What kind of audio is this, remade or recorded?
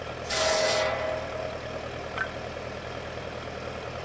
recorded